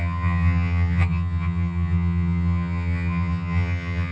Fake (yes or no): yes